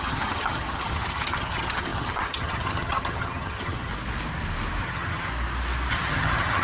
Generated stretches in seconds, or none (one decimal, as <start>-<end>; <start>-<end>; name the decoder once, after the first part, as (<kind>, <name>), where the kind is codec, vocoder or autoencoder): 0.0-3.9 (vocoder, HiFi-GAN); 4.8-5.3; 5.9-6.6

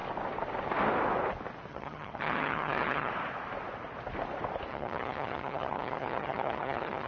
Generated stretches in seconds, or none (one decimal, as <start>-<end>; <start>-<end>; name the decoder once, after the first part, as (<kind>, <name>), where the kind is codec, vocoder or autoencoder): 1.7-3.1 (vocoder, HiFi-GAN); 4.7-7.1

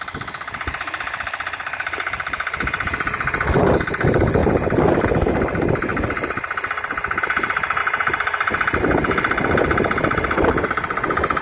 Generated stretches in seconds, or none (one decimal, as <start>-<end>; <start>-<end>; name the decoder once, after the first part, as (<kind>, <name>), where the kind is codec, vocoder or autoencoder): none

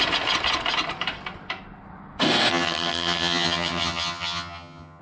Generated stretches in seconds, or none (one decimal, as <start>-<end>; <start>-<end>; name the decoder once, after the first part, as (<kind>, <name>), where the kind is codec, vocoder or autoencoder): 2.5-5.0 (vocoder, HiFi-GAN)

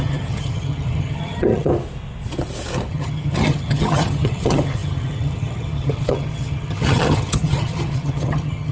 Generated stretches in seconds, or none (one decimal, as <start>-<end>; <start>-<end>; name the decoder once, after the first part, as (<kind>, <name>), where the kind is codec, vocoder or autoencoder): 0.0-1.7 (vocoder, HiFi-GAN); 2.9-8.7

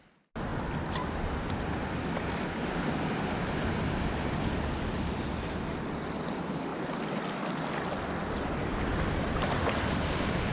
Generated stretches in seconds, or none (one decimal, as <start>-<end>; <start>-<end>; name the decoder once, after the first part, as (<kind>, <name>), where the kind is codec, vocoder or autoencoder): none

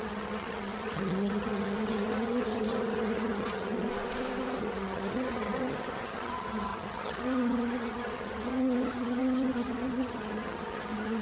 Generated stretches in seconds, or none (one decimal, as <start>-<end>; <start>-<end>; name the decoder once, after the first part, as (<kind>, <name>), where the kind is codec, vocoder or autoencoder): 0.0-3.9 (vocoder, HiFi-GAN); 4.6-11.2